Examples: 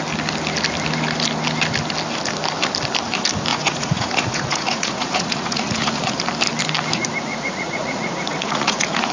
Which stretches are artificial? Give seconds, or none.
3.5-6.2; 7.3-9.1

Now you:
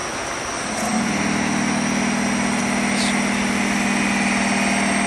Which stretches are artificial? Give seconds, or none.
none

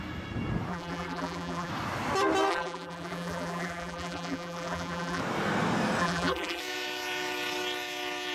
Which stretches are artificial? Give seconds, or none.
0.7-1.7; 2.5-5.2; 6.0-6.6

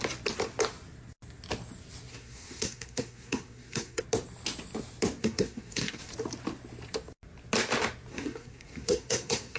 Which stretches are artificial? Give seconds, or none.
2.1-4.0; 5.2-6.1; 8.1-9.6

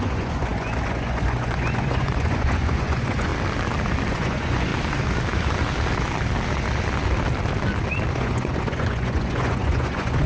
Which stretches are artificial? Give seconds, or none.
0.0-3.3; 4.1-4.7; 8.1-10.3